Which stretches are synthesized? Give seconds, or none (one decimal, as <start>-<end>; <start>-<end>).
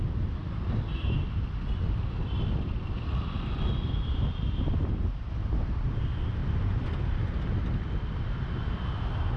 none